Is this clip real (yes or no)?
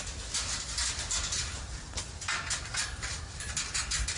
yes